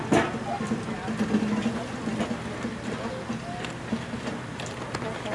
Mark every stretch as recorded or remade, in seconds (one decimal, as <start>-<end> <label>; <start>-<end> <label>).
0.0-5.3 recorded